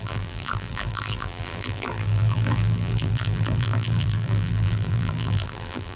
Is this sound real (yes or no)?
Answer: no